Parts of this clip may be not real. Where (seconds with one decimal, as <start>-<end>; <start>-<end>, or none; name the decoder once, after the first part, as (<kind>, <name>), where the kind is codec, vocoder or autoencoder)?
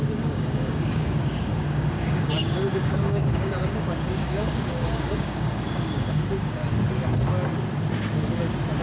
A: 0.0-6.6 (codec, DAC)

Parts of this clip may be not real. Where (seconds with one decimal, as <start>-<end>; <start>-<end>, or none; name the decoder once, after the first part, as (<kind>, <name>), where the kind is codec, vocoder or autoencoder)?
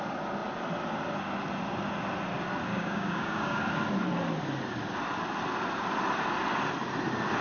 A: 2.7-3.6 (codec, DAC)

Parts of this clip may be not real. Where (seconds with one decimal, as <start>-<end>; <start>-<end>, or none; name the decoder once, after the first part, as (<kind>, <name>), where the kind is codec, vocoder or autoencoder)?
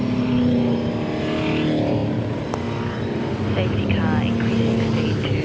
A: none